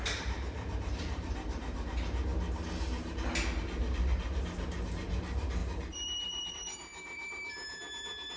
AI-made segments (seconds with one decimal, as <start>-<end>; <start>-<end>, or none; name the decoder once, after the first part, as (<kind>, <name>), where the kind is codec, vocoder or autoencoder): 0.0-2.3 (vocoder, BigVGAN v2); 3.6-8.4